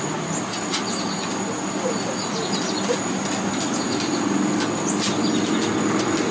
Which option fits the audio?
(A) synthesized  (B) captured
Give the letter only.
B